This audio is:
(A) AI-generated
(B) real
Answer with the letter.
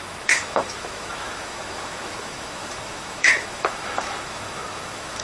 A